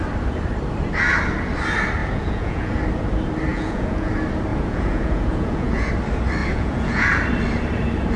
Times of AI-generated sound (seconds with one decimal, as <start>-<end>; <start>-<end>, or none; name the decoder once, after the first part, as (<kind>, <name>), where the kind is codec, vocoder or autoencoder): 2.0-2.8 (vocoder, Vocos); 3.5-4.1; 4.5-5.9; 6.4-7.1

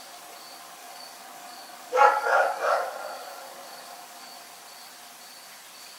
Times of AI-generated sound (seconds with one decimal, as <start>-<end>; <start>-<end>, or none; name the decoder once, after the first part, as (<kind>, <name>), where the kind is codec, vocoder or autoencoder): 0.8-4.4 (codec, DAC)

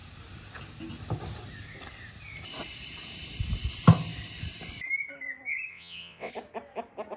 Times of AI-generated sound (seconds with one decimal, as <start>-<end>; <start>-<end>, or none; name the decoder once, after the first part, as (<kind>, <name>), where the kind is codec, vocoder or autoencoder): 5.7-6.3 (vocoder, WaveNeXt)

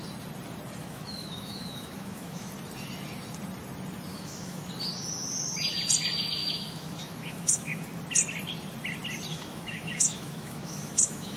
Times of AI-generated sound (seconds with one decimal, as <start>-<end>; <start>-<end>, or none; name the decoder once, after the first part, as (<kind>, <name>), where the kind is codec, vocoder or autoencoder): 0.8-2.5 (autoencoder, DAC-VAE); 4.1-4.7; 6.4-7.9; 9.3-11.4

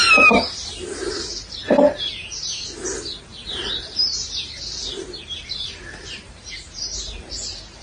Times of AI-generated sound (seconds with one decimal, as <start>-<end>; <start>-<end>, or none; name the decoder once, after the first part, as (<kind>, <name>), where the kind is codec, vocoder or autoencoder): 0.0-7.8 (vocoder, BigVGAN v2)

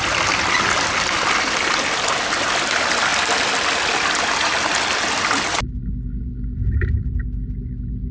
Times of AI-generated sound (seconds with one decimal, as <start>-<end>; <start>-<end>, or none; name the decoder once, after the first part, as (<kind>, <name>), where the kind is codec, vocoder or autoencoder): none

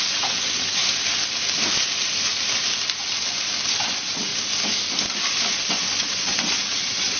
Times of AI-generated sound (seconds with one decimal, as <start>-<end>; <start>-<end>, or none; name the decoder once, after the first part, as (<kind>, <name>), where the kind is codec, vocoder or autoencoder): 0.0-0.8 (vocoder, WaveNeXt); 3.8-4.3; 5.7-7.2

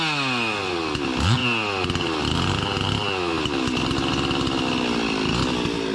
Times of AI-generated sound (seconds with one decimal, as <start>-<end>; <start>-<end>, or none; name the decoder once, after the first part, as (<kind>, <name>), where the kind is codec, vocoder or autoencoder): none